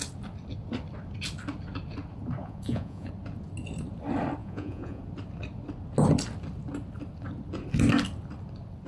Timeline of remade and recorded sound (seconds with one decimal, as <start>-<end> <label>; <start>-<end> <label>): 0.0-2.4 recorded; 2.4-3.1 remade; 3.1-4.4 recorded; 4.4-5.0 remade; 5.0-8.9 recorded